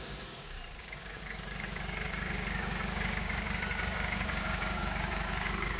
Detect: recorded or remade remade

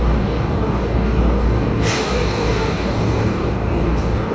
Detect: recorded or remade remade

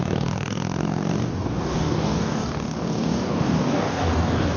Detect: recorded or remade remade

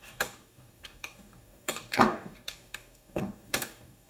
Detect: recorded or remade remade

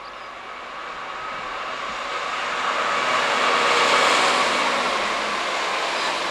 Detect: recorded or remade recorded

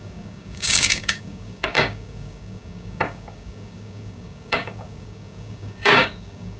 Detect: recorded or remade remade